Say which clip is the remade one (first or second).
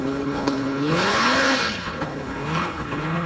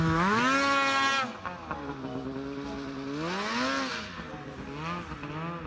first